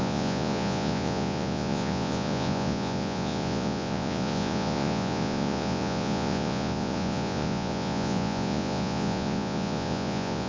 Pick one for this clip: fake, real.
fake